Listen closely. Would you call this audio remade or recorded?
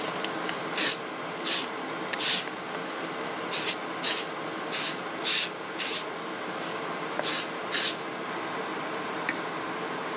recorded